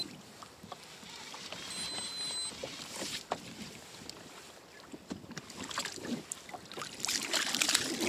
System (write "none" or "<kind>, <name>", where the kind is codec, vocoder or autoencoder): none